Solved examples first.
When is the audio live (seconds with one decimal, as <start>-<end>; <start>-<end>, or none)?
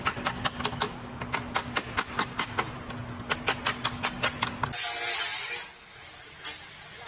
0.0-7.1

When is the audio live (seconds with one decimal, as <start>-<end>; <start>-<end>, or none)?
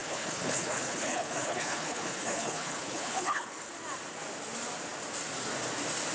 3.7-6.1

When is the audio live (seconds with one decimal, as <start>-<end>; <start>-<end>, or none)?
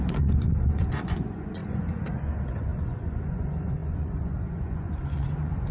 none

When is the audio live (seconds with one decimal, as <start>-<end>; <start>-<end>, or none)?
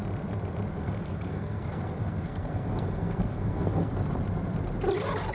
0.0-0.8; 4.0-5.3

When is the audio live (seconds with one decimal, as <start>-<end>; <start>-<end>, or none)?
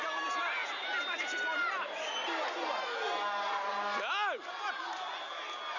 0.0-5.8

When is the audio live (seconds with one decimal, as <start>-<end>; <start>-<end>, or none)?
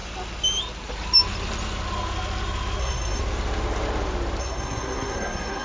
0.0-2.8; 3.2-4.4